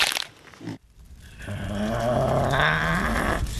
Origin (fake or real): real